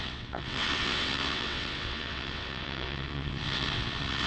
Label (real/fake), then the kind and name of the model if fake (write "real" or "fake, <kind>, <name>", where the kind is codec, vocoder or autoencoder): fake, vocoder, WaveNeXt